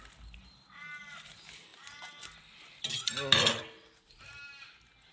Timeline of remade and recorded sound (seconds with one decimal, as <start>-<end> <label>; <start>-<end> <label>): 0.0-5.1 recorded